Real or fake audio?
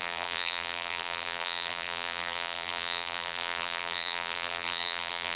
fake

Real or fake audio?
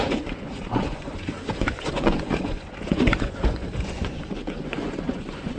fake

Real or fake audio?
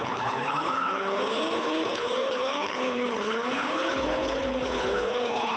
fake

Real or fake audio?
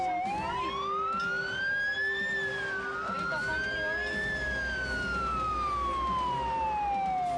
real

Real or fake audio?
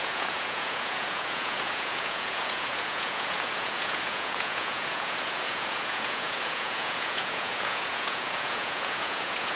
fake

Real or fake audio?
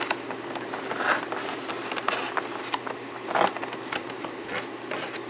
real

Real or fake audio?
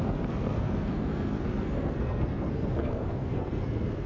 fake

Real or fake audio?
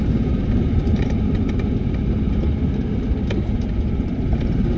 fake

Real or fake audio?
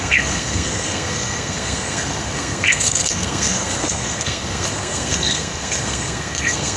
fake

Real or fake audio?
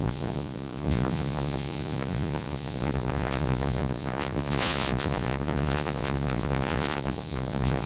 fake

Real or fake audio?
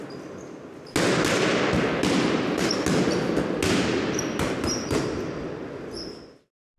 real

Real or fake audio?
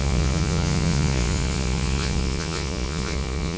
fake